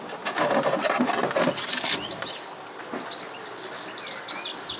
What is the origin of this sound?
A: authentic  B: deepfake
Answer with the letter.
A